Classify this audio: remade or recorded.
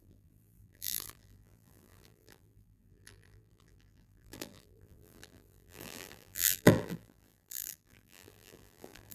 remade